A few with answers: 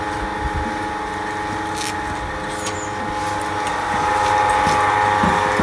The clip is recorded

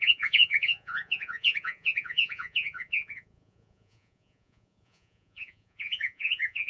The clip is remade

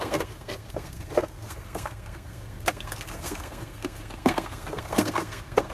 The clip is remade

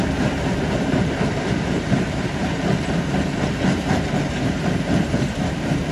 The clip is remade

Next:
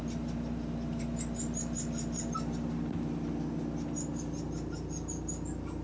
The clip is recorded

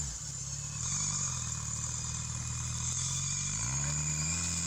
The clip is recorded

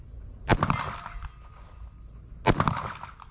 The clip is recorded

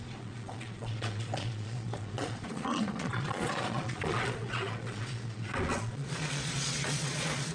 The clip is remade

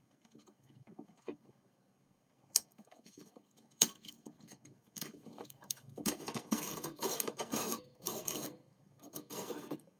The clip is remade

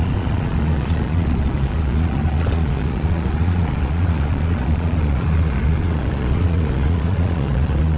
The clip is remade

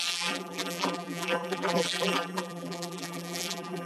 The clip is remade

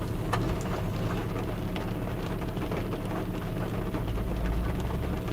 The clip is recorded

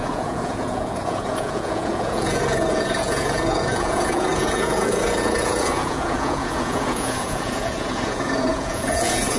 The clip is remade